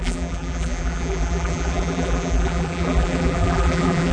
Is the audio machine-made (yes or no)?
yes